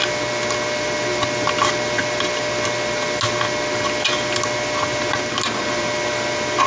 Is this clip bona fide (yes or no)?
yes